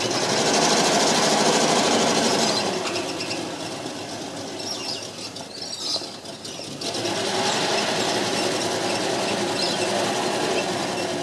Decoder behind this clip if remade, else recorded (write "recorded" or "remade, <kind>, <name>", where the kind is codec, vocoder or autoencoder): recorded